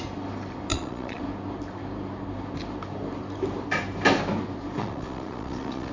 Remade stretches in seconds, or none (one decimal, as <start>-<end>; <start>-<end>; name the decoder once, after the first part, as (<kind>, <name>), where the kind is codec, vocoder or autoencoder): 0.7-1.2 (vocoder, Vocos); 4.8-5.9